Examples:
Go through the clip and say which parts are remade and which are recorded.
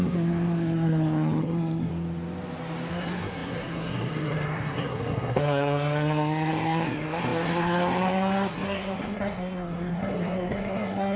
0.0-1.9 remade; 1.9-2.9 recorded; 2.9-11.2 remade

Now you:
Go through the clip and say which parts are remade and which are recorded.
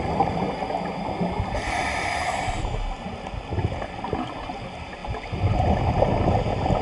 0.0-6.8 recorded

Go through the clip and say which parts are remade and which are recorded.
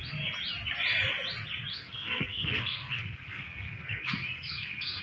0.0-1.7 recorded; 1.7-5.0 remade